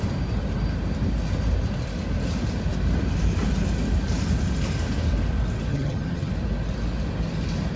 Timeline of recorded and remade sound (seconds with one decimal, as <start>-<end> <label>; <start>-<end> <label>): 0.0-5.7 recorded; 5.7-6.3 remade; 6.3-7.8 recorded